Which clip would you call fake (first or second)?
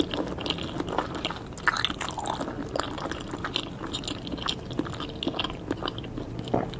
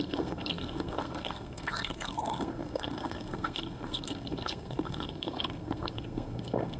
second